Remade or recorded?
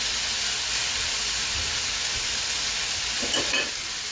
recorded